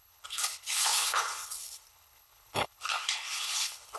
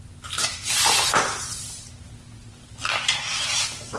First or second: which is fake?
first